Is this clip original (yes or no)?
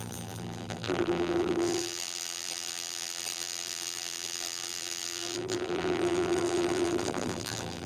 no